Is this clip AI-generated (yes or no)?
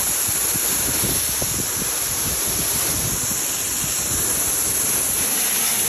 no